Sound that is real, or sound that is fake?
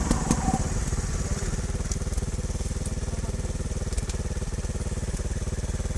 real